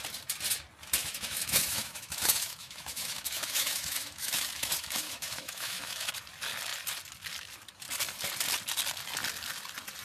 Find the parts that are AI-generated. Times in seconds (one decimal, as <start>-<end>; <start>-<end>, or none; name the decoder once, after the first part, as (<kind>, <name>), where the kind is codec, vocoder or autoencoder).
1.0-6.1 (autoencoder, DAC-VAE)